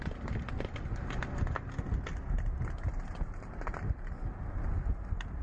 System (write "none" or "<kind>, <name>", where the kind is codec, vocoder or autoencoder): none